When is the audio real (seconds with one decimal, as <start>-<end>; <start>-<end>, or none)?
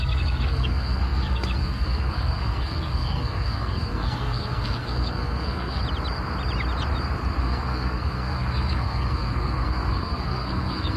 5.8-7.4